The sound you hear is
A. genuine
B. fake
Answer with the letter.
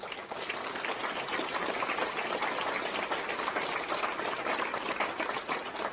A